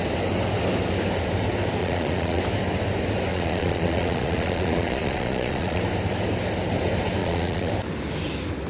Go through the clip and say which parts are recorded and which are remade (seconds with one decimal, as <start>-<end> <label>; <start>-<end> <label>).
0.0-1.8 recorded; 1.8-2.4 remade; 2.4-3.3 recorded; 3.3-5.8 remade; 5.8-7.2 recorded; 7.2-7.7 remade; 7.7-8.7 recorded